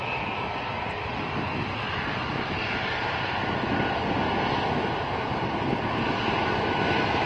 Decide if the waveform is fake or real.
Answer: real